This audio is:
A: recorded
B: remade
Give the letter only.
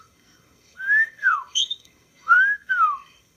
B